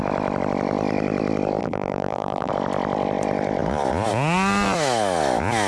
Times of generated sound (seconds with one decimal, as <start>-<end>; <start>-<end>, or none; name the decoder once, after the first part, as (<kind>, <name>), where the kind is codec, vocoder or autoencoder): 1.6-2.5 (vocoder, BigVGAN v2)